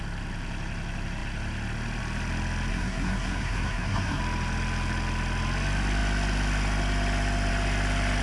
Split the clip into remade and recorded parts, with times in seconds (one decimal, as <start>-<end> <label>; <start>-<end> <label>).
0.0-2.7 recorded; 2.7-4.2 remade; 4.2-8.2 recorded